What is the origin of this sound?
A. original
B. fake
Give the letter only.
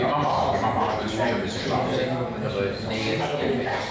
A